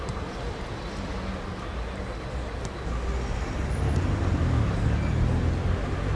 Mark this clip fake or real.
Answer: real